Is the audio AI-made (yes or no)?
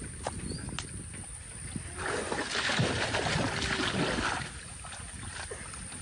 no